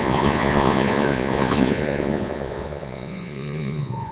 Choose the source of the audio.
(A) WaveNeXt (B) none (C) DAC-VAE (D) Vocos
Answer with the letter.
D